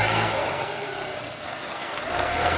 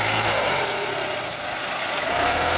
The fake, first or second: first